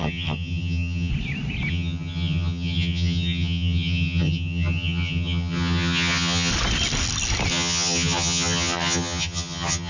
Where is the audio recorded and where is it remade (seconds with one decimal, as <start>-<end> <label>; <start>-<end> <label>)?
0.0-1.1 remade; 1.1-1.7 recorded; 1.7-6.5 remade; 6.5-7.5 recorded; 7.5-9.9 remade